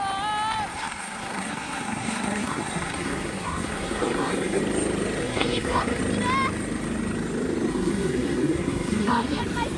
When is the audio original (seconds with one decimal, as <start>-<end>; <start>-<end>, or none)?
0.0-0.7; 4.6-5.2; 6.0-7.7; 9.4-9.8